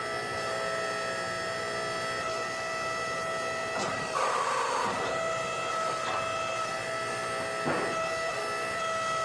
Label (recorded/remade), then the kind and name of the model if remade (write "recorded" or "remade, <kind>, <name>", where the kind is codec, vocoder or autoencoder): recorded